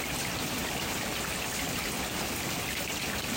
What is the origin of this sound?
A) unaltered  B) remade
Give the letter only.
A